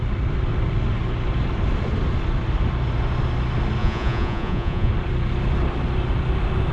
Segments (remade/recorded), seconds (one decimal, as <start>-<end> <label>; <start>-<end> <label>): 0.0-3.8 recorded; 3.8-4.9 remade; 4.9-6.7 recorded

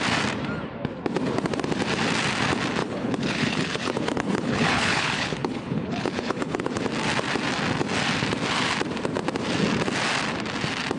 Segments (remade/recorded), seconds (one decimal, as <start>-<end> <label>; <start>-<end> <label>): 0.0-2.8 recorded; 2.8-6.8 remade; 6.8-11.0 recorded

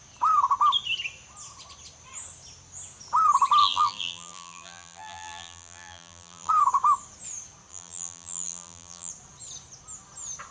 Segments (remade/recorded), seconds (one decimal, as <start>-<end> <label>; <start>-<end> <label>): 0.0-3.6 recorded; 3.6-6.5 remade; 6.5-7.7 recorded; 7.7-9.1 remade; 9.1-10.5 recorded

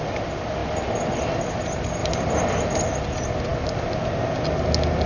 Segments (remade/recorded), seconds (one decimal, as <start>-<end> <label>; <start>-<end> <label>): 0.0-5.1 recorded

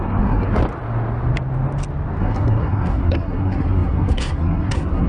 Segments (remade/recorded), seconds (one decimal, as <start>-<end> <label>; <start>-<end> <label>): 0.0-0.6 remade; 0.6-2.2 recorded; 2.2-5.1 remade

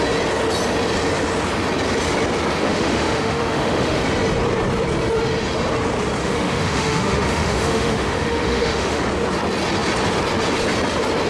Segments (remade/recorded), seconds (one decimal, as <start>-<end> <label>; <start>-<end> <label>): 0.0-2.6 recorded; 2.6-4.0 remade; 4.0-6.2 recorded; 6.2-9.0 remade; 9.0-11.3 recorded

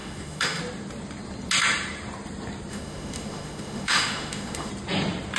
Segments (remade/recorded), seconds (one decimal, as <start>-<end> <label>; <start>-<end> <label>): 0.0-0.6 remade; 0.6-2.7 recorded; 2.7-4.7 remade; 4.7-5.4 recorded

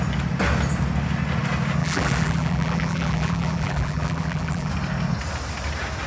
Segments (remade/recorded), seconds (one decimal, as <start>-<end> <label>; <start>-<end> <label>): 0.0-1.8 recorded; 1.8-4.7 remade; 4.7-6.1 recorded